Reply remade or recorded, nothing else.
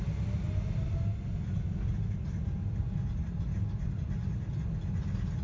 recorded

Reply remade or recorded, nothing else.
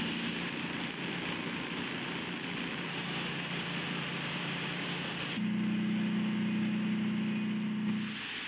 recorded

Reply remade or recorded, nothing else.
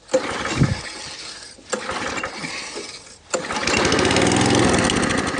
recorded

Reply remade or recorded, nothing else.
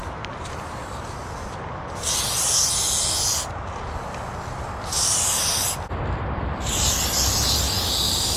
recorded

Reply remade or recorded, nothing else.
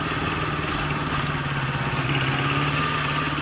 recorded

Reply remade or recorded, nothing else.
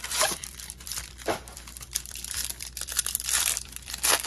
remade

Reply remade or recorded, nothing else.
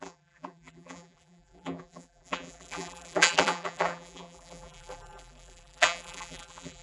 remade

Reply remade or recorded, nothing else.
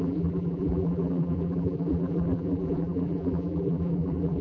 remade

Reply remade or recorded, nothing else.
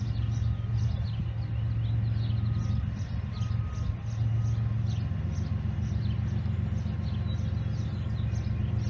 recorded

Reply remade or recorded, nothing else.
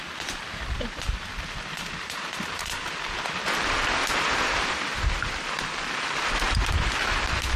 remade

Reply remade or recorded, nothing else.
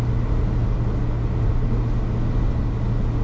recorded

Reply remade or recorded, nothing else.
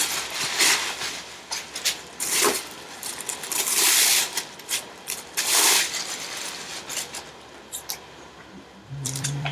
remade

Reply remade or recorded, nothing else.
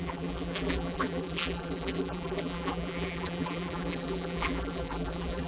remade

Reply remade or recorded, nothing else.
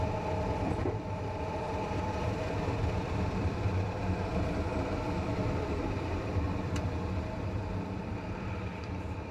remade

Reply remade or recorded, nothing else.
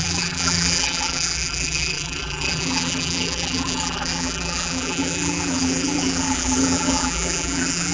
remade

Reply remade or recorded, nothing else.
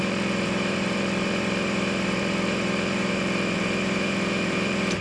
remade